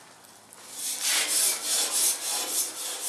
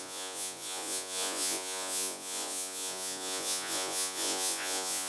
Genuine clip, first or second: first